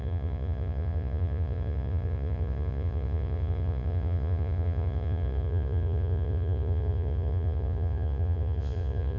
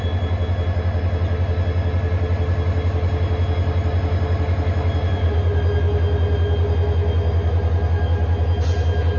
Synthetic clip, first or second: first